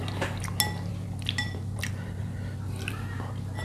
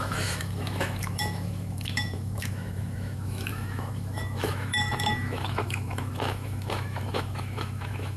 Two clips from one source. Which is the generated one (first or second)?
second